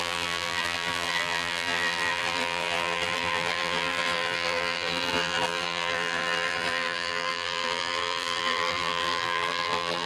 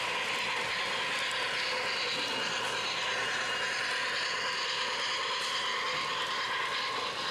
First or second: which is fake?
first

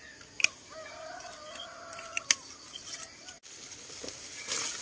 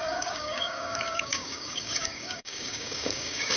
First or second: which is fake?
second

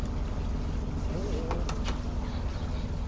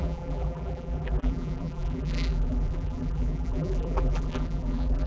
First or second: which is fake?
second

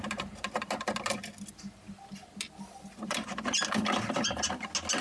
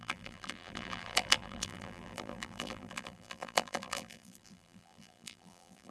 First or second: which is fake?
second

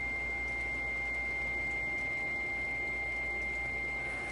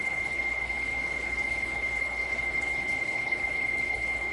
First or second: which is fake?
second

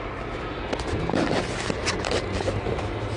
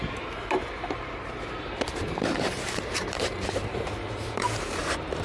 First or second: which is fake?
second